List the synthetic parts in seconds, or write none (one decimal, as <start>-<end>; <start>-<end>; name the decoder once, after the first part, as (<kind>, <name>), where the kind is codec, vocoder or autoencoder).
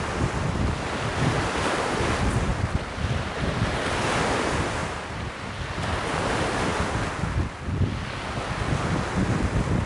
4.8-5.4 (vocoder, BigVGAN v2)